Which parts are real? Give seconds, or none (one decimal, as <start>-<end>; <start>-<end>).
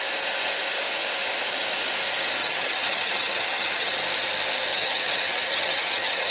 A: 0.0-2.4; 3.9-4.7